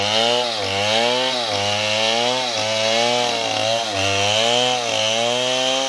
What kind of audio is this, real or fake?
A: real